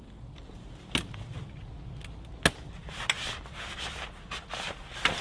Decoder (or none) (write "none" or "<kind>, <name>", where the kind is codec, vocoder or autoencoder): none